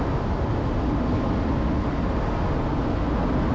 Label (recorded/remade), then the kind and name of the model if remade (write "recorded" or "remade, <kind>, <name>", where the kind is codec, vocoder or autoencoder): recorded